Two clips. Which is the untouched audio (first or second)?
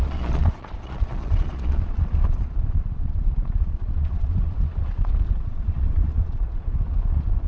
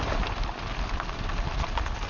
second